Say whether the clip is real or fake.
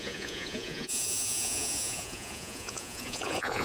fake